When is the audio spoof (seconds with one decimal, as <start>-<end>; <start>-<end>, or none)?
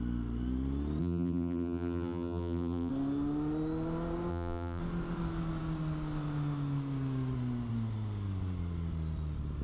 1.0-2.9; 4.3-4.8